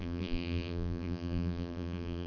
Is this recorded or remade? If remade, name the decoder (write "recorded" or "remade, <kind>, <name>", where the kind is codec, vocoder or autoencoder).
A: remade, vocoder, BigVGAN v2